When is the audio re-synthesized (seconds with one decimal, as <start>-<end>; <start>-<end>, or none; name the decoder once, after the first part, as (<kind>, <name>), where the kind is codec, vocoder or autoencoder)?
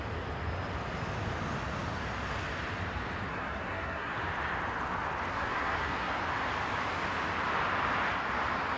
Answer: 3.3-4.2 (codec, SNAC); 5.3-6.2